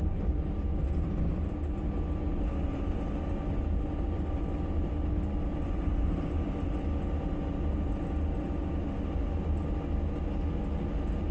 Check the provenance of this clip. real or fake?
real